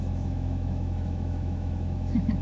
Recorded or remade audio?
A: remade